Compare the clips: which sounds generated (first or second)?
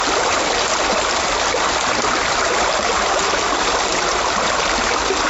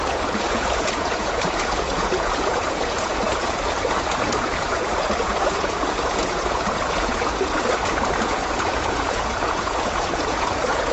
second